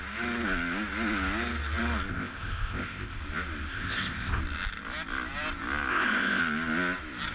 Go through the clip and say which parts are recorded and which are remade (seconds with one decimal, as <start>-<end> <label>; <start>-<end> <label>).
0.0-2.1 recorded; 2.1-3.2 remade; 3.2-3.7 recorded; 3.7-4.4 remade; 4.4-5.9 recorded; 5.9-6.4 remade; 6.4-7.3 recorded